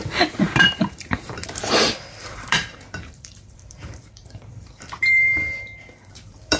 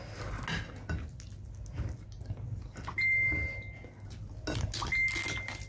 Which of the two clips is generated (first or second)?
first